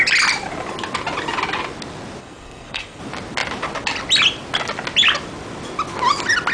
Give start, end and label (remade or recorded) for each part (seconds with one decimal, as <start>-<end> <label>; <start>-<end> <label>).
0.0-2.2 recorded; 2.2-3.0 remade; 3.0-6.5 recorded